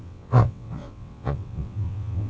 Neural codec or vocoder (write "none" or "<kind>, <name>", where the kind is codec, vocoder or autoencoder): vocoder, WaveNeXt